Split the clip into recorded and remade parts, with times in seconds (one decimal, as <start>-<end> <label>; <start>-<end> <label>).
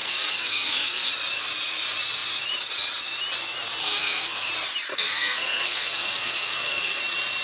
0.0-1.1 remade; 1.1-3.8 recorded; 3.8-4.5 remade; 4.5-4.9 recorded; 4.9-7.0 remade; 7.0-7.4 recorded